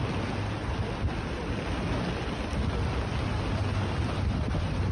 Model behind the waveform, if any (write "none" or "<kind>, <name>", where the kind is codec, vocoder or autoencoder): none